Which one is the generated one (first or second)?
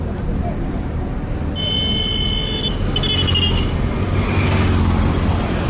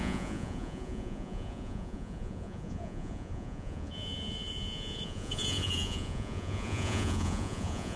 second